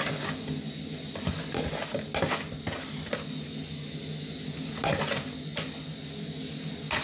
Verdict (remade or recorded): recorded